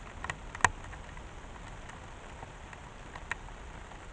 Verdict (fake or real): real